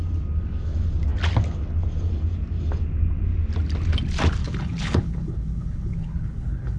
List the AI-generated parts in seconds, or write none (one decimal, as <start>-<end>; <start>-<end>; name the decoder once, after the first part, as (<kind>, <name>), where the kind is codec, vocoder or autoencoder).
4.4-6.8 (codec, HILCodec)